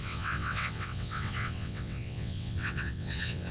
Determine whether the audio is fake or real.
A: fake